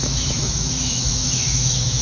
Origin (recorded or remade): remade